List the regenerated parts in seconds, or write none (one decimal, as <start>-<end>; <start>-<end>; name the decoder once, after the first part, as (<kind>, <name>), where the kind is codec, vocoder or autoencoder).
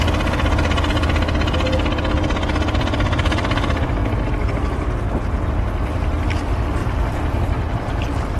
6.8-8.4 (vocoder, BigVGAN v2)